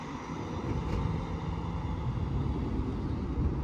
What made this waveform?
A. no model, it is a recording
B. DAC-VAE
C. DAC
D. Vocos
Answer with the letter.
A